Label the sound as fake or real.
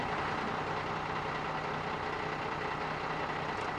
real